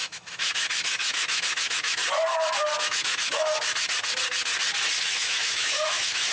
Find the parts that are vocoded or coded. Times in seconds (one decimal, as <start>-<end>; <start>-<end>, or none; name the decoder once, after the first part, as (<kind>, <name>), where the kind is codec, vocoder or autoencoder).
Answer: 0.0-2.0 (autoencoder, DAC-VAE); 2.8-3.5; 5.0-6.3